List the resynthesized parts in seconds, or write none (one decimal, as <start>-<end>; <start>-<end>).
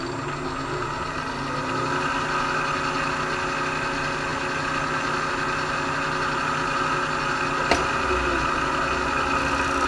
none